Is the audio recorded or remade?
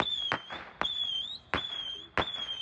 recorded